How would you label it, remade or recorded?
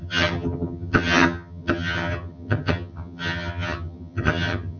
remade